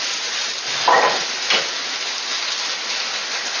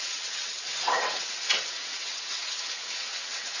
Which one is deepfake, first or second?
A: second